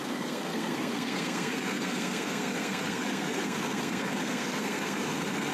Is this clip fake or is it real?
fake